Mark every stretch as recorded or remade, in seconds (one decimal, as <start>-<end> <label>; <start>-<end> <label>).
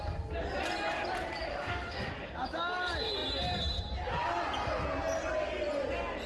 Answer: 0.0-1.5 recorded; 1.5-2.1 remade; 2.1-6.3 recorded